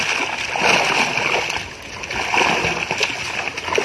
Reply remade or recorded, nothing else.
recorded